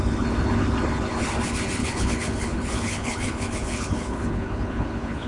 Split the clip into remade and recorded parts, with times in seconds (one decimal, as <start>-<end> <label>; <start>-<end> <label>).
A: 0.0-1.8 recorded; 1.8-5.3 remade